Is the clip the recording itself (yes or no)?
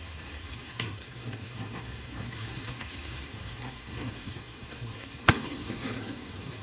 no